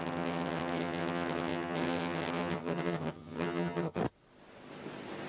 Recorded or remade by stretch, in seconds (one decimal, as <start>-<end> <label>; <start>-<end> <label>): 0.0-4.0 remade; 4.0-5.3 recorded